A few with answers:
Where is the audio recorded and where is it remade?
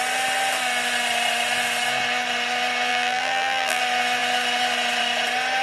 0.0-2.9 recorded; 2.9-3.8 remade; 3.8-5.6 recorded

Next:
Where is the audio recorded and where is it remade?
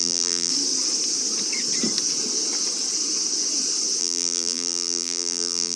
0.0-0.5 remade; 0.5-4.0 recorded; 4.0-5.8 remade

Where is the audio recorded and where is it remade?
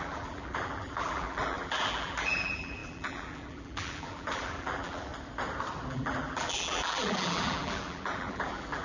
0.0-5.1 remade; 5.1-5.9 recorded; 5.9-8.8 remade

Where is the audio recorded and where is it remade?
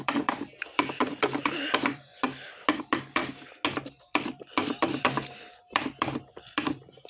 0.0-2.1 remade; 2.1-2.8 recorded; 2.8-3.2 remade; 3.2-4.0 recorded; 4.0-7.1 remade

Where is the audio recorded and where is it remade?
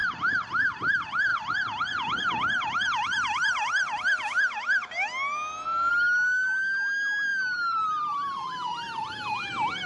0.0-0.7 remade; 0.7-7.3 recorded; 7.3-8.5 remade; 8.5-9.9 recorded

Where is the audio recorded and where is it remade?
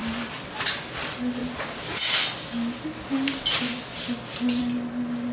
0.0-5.3 recorded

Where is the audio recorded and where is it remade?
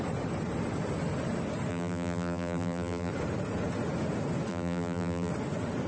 0.0-1.7 recorded; 1.7-3.1 remade; 3.1-4.5 recorded; 4.5-5.3 remade; 5.3-5.9 recorded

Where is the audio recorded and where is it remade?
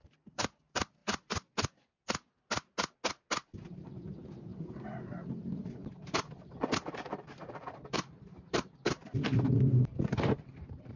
0.0-1.0 remade; 1.0-3.6 recorded; 3.6-11.0 remade